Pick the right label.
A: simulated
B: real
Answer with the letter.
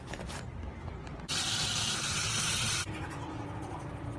B